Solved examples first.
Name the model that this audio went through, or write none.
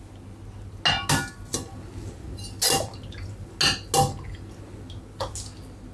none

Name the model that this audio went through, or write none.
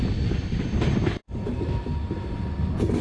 none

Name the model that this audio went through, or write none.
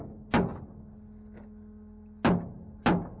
none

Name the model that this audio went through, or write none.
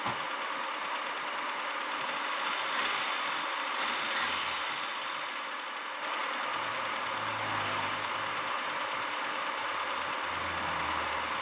none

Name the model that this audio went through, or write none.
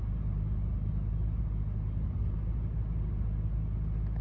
none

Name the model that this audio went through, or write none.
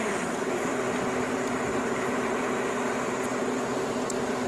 none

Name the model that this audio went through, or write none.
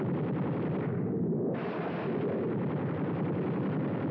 none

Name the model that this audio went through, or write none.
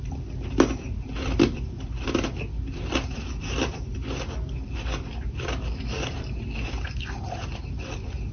none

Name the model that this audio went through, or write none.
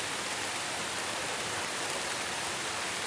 none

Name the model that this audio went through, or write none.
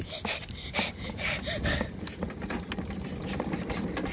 none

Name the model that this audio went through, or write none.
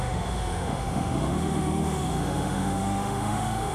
autoencoder, DAC-VAE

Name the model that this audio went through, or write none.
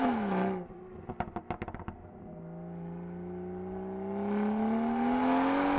none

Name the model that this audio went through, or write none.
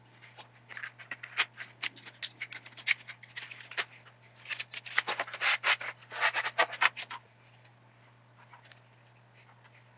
none